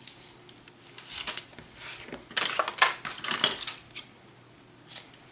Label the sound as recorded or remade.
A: recorded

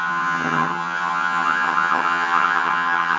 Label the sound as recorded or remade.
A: remade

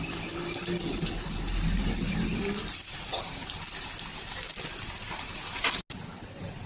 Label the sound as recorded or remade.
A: recorded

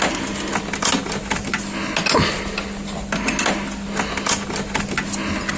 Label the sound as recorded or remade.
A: recorded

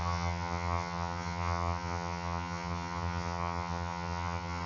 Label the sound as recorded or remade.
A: remade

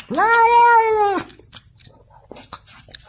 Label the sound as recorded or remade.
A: recorded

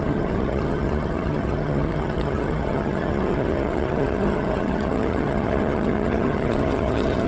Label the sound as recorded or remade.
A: remade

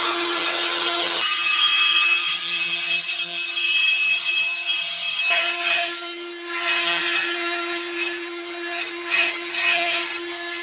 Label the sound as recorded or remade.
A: remade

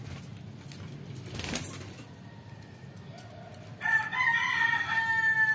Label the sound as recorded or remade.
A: recorded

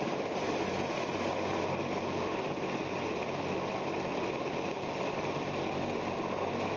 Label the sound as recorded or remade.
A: recorded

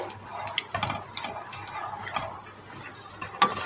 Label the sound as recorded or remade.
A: recorded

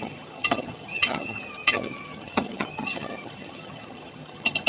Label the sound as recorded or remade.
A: remade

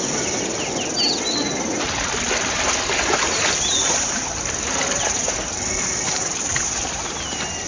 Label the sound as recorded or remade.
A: recorded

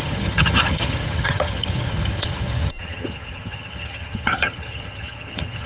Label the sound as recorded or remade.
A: remade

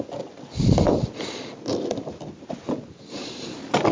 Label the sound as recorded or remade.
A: recorded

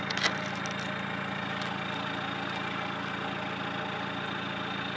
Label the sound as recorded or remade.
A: recorded